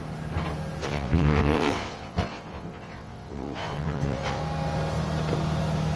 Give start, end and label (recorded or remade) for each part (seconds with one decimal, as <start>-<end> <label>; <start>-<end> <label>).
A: 0.0-0.8 recorded; 0.8-4.4 remade; 4.4-6.0 recorded